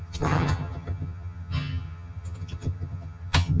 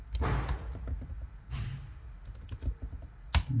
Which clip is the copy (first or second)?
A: first